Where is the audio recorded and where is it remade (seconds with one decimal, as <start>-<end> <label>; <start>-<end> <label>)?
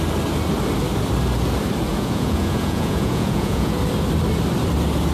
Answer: 0.0-1.9 recorded; 1.9-3.8 remade; 3.8-5.1 recorded